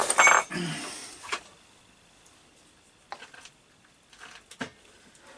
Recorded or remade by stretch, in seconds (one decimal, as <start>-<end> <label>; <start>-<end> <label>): 0.0-3.2 remade; 3.2-5.4 recorded